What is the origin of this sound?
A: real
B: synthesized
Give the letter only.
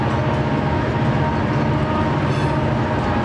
A